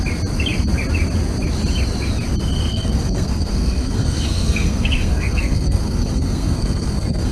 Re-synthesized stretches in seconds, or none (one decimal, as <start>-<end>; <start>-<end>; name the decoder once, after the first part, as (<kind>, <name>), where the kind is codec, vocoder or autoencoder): 2.7-7.3 (codec, SNAC)

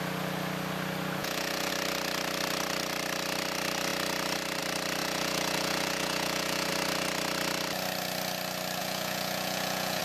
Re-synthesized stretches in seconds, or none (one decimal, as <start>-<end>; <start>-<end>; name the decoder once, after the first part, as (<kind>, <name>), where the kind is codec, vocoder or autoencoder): 1.2-1.7 (vocoder, Vocos); 5.0-6.7; 8.8-10.0

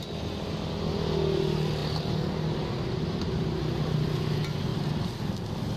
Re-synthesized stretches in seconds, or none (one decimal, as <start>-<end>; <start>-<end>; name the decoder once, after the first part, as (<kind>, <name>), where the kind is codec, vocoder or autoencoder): none

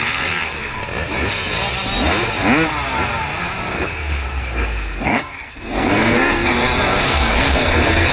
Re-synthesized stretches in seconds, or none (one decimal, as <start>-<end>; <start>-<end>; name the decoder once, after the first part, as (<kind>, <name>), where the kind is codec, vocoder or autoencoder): 0.0-0.8 (codec, SNAC); 3.7-6.5; 7.0-8.1